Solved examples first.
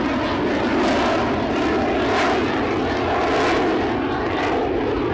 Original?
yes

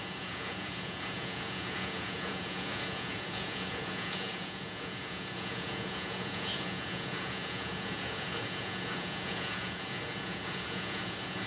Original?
no